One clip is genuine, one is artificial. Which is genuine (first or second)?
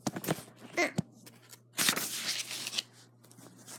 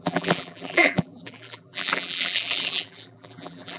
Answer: first